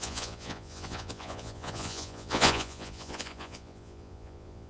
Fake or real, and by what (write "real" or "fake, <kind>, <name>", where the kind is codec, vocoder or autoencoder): fake, vocoder, Vocos